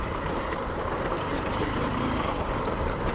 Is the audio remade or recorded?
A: remade